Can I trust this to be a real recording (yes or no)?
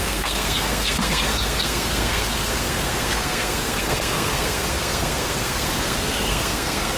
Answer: no